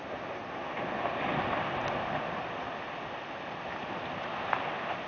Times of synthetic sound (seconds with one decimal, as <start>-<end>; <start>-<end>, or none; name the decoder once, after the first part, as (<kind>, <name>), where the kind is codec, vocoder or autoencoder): none

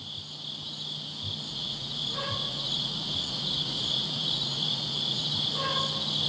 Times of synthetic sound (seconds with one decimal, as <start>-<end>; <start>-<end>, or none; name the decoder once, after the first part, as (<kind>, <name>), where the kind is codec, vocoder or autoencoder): 1.5-5.3 (vocoder, Vocos)

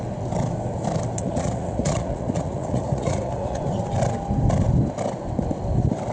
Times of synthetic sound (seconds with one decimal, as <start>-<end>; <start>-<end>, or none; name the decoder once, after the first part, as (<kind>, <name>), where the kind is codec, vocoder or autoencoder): 1.2-3.6 (vocoder, Vocos)

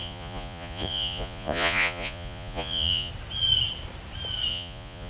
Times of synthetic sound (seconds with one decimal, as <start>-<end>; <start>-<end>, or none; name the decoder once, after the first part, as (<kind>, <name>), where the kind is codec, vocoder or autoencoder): 0.0-3.1 (vocoder, Vocos); 4.5-5.1